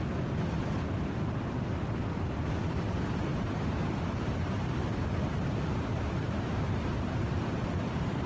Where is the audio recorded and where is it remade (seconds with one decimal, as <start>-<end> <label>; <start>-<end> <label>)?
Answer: 0.0-3.3 recorded; 3.3-7.0 remade; 7.0-8.3 recorded